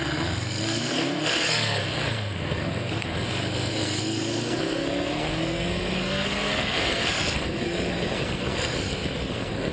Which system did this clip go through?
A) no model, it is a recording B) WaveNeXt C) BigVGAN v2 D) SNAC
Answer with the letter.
D